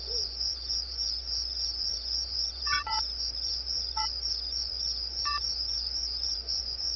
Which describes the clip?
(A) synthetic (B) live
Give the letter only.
A